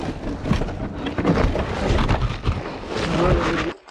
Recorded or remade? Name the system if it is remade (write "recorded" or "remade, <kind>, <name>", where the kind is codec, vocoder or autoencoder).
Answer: recorded